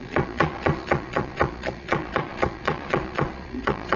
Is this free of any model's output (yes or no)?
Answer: no